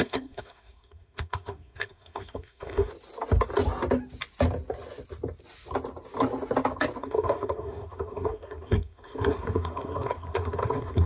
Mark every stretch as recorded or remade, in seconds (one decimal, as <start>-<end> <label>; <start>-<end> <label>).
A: 0.0-2.9 remade; 2.9-7.0 recorded; 7.0-11.1 remade